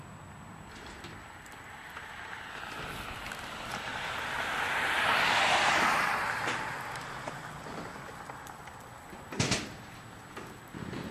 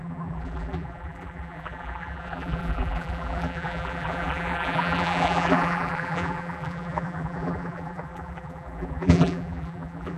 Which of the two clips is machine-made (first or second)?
second